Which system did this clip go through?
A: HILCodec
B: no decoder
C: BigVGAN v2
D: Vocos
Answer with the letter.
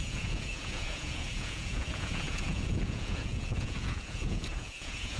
D